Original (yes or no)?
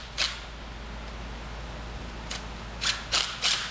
yes